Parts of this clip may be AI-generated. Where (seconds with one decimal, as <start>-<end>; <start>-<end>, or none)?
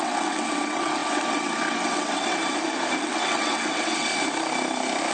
0.0-2.4; 3.0-4.1